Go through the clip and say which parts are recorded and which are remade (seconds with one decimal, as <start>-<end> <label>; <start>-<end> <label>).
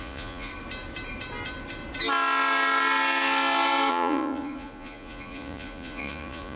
0.0-0.5 remade; 0.5-3.9 recorded; 3.9-6.6 remade